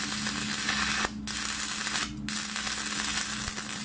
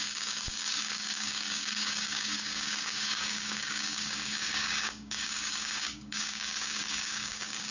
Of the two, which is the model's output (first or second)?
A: second